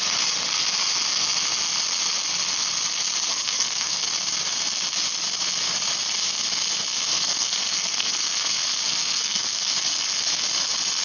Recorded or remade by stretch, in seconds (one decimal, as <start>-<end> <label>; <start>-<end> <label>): 0.0-3.3 recorded; 3.3-4.0 remade; 4.0-7.1 recorded; 7.1-9.7 remade; 9.7-11.0 recorded